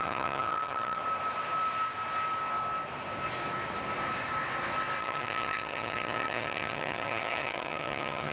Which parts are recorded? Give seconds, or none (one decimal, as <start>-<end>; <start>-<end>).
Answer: 1.0-5.0